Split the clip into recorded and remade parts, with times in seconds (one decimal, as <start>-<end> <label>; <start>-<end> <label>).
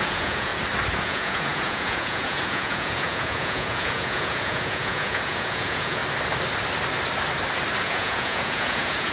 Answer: 0.0-0.5 remade; 0.5-1.0 recorded; 1.0-6.0 remade; 6.0-7.8 recorded; 7.8-9.1 remade